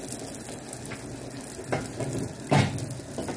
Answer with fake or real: real